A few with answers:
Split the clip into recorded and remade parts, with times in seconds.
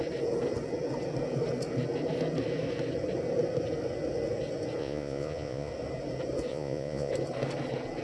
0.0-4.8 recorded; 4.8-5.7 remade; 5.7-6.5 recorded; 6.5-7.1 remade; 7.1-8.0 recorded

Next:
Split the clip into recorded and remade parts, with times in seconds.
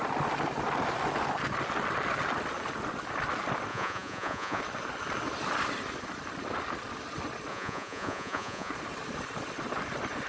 0.0-3.7 recorded; 3.7-4.6 remade; 4.6-7.5 recorded; 7.5-8.7 remade; 8.7-10.3 recorded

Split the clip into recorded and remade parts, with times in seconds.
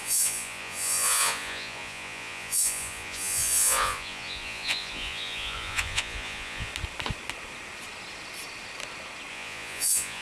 0.0-6.7 remade; 6.7-9.3 recorded; 9.3-10.2 remade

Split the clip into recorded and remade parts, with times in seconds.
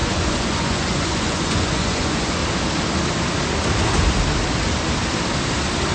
0.0-2.4 remade; 2.4-5.9 recorded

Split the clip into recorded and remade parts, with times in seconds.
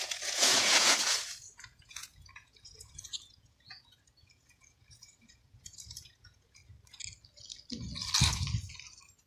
0.0-6.6 remade; 6.6-9.3 recorded